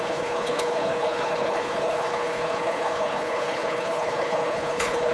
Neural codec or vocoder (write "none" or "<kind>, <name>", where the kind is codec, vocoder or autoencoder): codec, HILCodec